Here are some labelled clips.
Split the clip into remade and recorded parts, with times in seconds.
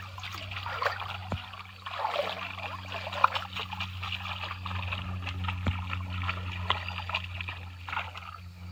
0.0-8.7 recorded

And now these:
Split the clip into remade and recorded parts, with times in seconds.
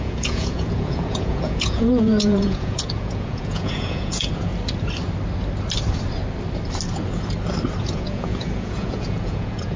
0.0-4.5 remade; 4.5-7.8 recorded; 7.8-9.8 remade